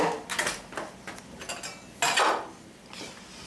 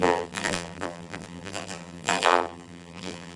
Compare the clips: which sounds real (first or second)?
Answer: first